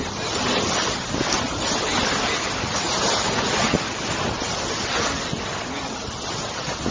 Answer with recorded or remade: recorded